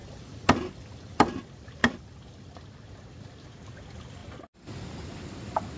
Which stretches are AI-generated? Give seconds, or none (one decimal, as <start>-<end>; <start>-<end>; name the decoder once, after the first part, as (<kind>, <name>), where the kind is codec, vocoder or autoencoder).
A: none